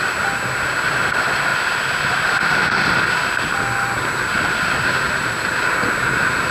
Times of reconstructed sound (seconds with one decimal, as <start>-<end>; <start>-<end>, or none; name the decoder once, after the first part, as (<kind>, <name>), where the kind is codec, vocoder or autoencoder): none